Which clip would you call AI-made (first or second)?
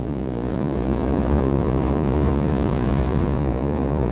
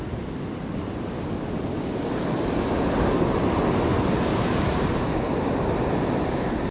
first